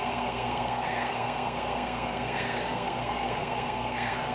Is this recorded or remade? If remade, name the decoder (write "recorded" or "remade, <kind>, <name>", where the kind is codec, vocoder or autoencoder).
remade, codec, SNAC